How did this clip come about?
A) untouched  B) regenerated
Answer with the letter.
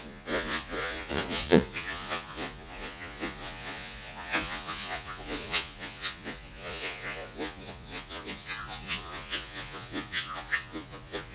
B